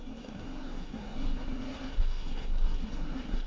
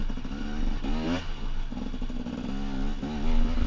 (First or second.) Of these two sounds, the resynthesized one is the first